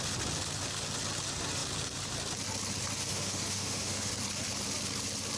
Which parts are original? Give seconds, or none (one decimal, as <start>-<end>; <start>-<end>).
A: 0.0-3.1; 4.1-5.4